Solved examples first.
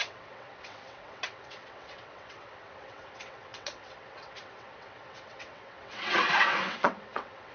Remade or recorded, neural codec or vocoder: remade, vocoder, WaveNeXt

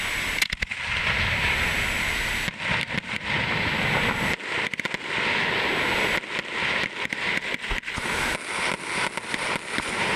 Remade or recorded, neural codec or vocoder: recorded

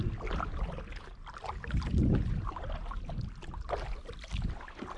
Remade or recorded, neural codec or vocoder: recorded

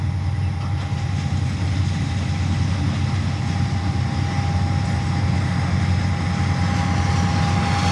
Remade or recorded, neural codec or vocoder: recorded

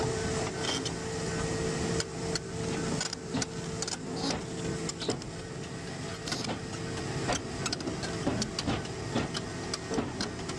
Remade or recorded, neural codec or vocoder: recorded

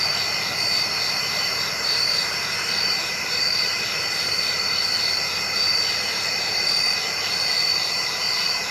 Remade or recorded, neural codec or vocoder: remade, vocoder, BigVGAN v2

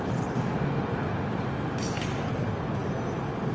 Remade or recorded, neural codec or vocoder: recorded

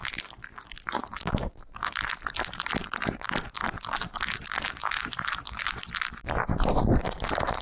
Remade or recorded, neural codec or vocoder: remade, vocoder, BigVGAN v2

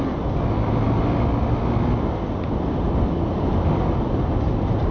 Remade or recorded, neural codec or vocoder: recorded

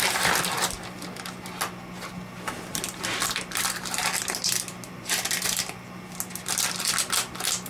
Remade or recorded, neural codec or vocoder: recorded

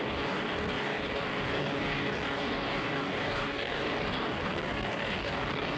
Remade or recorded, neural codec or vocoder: remade, codec, DAC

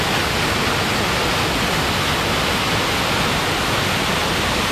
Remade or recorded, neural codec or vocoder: recorded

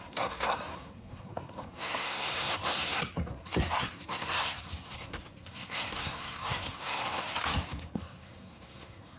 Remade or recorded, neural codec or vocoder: remade, codec, SNAC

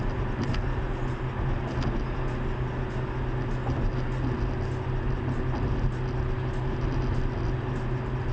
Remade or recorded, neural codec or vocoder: recorded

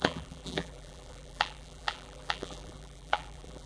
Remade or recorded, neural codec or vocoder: remade, vocoder, BigVGAN v2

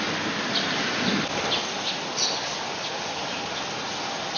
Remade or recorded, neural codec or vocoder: recorded